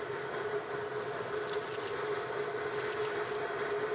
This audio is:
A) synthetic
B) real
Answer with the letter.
B